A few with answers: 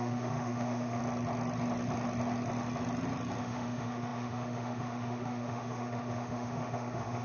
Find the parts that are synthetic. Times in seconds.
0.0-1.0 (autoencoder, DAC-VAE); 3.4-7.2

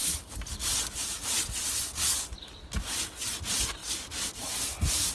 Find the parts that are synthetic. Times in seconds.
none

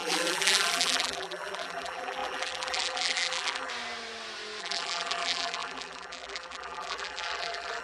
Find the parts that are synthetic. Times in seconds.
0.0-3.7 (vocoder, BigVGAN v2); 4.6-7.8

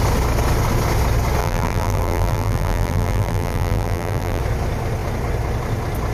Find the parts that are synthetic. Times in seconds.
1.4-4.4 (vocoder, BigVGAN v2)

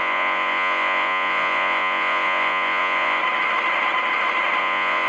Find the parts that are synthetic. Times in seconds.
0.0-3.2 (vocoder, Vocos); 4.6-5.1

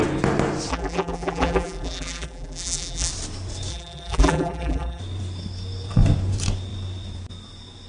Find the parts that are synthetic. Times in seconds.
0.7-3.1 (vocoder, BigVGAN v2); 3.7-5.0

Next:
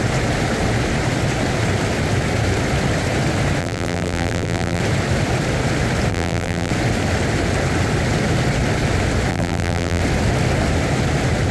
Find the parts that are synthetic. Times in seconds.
3.6-4.8 (vocoder, BigVGAN v2); 6.1-6.7; 9.3-10.0

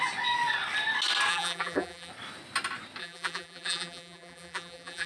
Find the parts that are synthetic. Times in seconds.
1.3-2.1 (vocoder, BigVGAN v2); 3.0-5.1